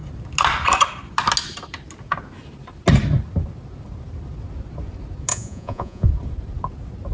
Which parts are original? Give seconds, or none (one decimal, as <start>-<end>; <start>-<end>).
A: 0.0-5.3; 6.1-7.1